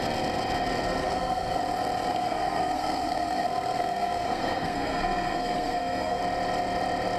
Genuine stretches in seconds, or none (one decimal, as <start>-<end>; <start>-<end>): 0.0-1.0; 1.6-2.1; 6.2-7.2